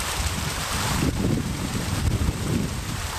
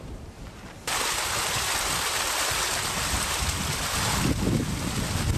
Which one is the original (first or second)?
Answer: second